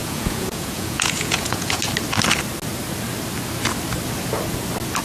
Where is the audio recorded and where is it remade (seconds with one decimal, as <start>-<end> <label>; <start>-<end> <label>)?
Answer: 0.0-1.8 remade; 1.8-5.0 recorded